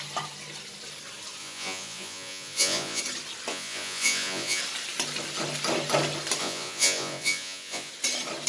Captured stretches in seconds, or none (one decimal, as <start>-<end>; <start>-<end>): 0.0-1.4; 3.0-3.5; 4.6-6.4; 7.9-8.5